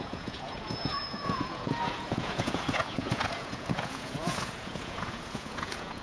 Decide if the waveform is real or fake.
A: fake